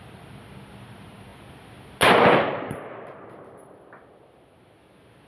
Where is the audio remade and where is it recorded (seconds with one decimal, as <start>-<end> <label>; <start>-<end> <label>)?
0.0-5.3 recorded